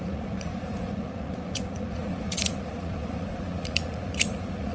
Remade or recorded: remade